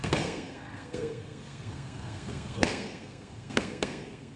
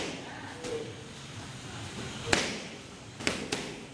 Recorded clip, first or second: second